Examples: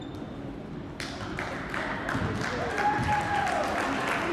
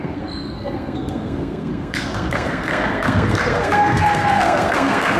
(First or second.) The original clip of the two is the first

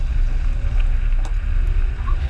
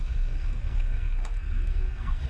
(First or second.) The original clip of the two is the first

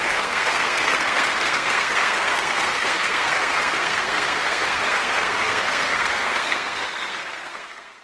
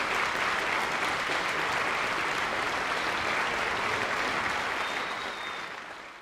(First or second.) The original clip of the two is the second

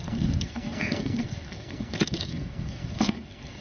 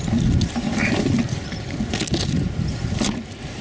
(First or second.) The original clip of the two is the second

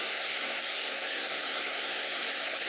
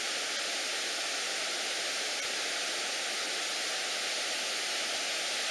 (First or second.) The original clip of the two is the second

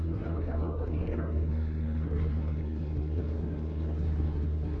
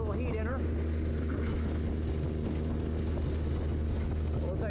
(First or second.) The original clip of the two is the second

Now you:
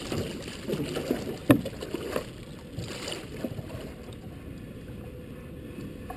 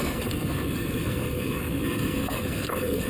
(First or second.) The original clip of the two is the first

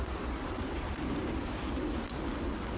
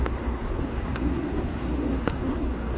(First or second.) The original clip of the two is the first